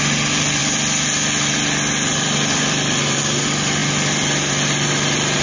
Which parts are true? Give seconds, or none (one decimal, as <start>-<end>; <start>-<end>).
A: 0.0-5.4